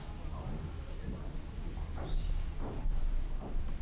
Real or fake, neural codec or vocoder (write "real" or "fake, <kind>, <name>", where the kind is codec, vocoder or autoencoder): real